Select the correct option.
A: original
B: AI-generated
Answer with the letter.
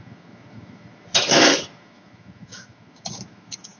B